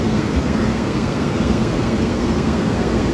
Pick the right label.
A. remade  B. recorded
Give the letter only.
A